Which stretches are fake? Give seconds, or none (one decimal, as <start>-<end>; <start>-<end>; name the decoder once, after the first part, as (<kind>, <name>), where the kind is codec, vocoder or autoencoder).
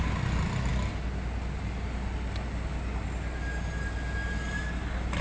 none